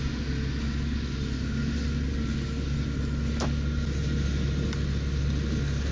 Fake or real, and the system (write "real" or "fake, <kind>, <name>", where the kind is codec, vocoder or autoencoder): real